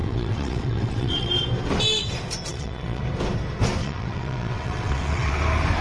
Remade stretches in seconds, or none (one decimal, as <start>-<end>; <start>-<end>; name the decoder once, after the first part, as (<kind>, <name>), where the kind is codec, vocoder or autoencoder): 0.0-1.3 (vocoder, WaveNeXt); 2.5-3.0; 3.8-5.3